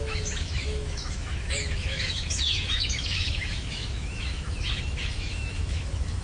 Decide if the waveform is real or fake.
fake